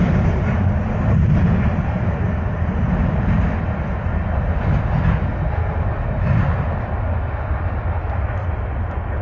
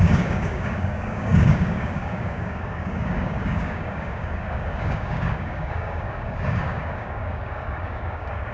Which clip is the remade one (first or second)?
second